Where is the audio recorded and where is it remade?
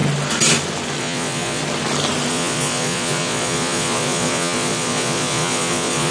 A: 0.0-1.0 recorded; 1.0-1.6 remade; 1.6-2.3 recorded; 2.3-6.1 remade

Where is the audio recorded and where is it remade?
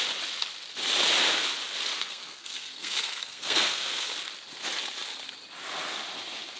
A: 0.0-1.9 recorded; 1.9-4.1 remade; 4.1-6.6 recorded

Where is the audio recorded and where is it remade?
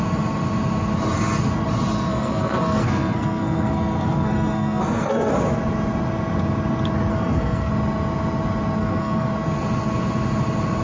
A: 0.0-2.1 recorded; 2.1-5.3 remade; 5.3-7.1 recorded; 7.1-7.7 remade; 7.7-8.8 recorded; 8.8-9.3 remade; 9.3-10.8 recorded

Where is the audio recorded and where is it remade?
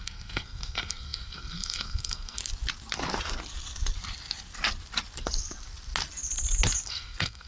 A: 0.0-2.4 remade; 2.4-6.9 recorded; 6.9-7.5 remade